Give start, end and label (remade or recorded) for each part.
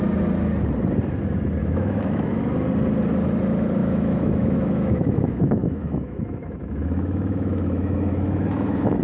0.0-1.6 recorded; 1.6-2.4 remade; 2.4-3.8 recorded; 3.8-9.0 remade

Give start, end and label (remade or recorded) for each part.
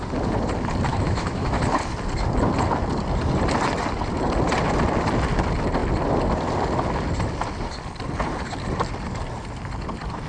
0.0-0.9 recorded; 0.9-1.6 remade; 1.6-10.3 recorded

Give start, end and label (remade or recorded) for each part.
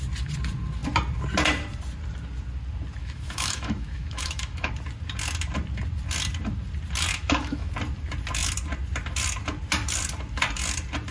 0.0-3.0 recorded; 3.0-4.7 remade; 4.7-7.1 recorded; 7.1-7.7 remade; 7.7-11.1 recorded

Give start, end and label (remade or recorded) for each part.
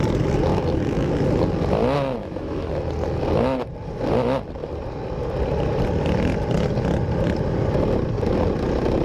0.0-0.5 recorded; 0.5-1.1 remade; 1.1-2.2 recorded; 2.2-2.7 remade; 2.7-9.0 recorded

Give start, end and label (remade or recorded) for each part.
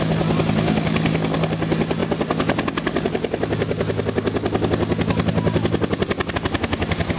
0.0-7.2 recorded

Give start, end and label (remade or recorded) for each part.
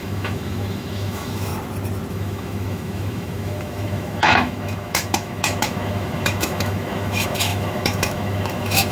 0.0-1.5 remade; 1.5-2.1 recorded; 2.1-8.9 remade